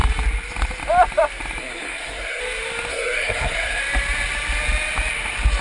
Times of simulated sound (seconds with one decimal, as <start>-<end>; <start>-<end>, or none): 1.6-2.4; 2.9-3.8